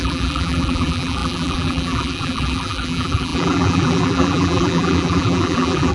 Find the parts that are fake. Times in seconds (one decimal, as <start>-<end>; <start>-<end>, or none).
0.0-5.9